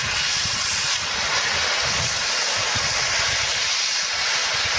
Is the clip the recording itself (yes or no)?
yes